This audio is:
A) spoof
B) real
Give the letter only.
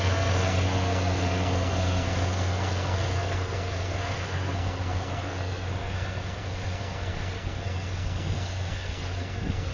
A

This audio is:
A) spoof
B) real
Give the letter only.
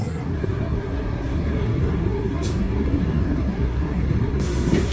A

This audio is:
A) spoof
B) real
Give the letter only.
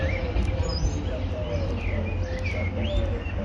B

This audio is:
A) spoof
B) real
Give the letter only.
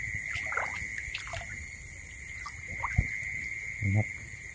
B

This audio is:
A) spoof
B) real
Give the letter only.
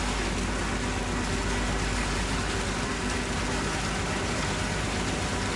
B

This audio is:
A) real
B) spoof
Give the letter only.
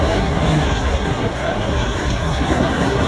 B